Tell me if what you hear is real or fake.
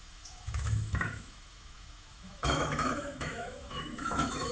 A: fake